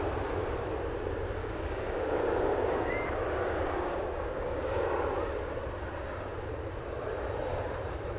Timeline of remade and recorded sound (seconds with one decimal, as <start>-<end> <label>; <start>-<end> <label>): 0.0-1.4 recorded; 1.4-4.7 remade; 4.7-8.2 recorded